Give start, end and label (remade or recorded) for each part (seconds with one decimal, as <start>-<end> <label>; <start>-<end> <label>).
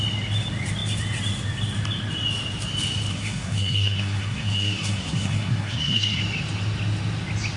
0.0-3.1 recorded; 3.1-6.2 remade; 6.2-7.6 recorded